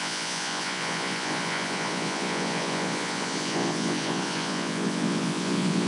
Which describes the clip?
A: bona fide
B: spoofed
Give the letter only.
B